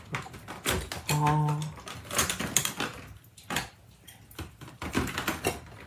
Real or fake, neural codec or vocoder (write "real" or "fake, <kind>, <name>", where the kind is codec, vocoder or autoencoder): real